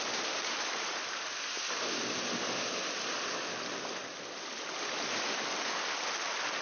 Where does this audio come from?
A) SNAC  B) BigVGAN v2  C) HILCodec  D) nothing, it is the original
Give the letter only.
B